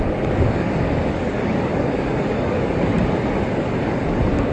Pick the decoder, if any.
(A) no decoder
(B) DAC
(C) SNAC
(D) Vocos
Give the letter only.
B